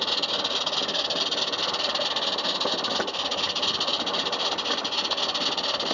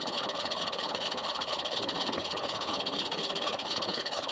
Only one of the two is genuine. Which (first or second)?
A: first